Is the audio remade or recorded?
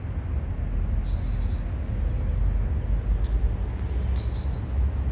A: recorded